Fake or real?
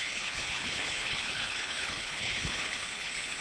fake